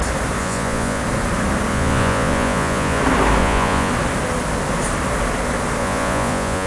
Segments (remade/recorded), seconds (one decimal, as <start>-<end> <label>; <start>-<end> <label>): 0.0-0.4 recorded; 0.4-1.0 remade; 1.0-1.7 recorded; 1.7-3.0 remade; 3.0-3.4 recorded; 3.4-3.9 remade; 3.9-5.8 recorded; 5.8-6.7 remade